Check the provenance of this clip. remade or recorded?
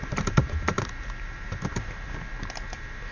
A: remade